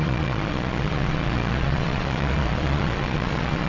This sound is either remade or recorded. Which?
remade